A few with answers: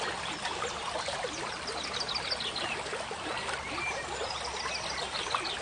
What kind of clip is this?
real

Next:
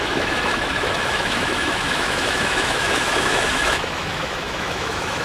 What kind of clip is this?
fake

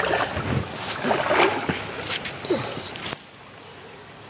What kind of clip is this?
real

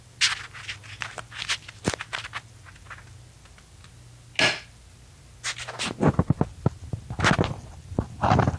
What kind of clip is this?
real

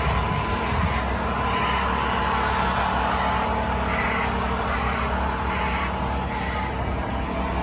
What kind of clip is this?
real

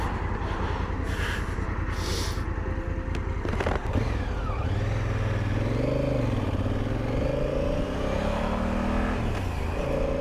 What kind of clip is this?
real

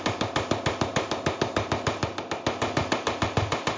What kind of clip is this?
real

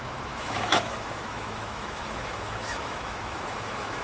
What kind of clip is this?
fake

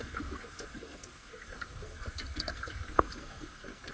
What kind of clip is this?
fake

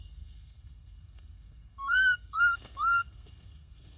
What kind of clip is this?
fake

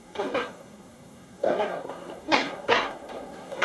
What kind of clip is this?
fake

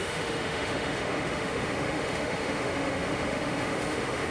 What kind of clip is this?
fake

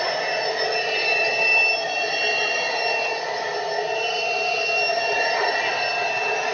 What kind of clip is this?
real